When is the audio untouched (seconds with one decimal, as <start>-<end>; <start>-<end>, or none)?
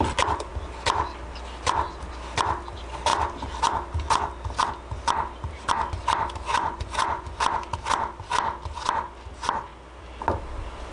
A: 0.0-6.5; 7.4-10.9